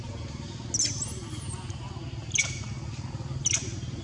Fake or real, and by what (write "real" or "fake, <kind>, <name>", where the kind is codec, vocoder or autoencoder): real